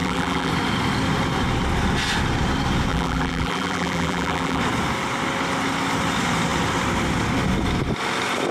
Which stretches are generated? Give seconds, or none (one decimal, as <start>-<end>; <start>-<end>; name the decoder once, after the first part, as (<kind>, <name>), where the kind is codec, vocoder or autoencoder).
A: 0.0-0.5 (vocoder, BigVGAN v2); 2.9-4.6